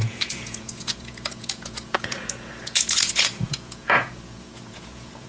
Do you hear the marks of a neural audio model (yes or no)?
yes